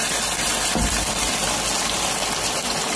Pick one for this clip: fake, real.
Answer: fake